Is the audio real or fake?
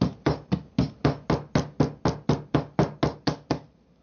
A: real